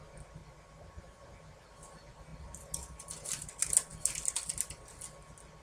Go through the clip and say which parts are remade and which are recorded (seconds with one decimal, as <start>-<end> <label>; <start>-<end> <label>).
0.0-5.6 recorded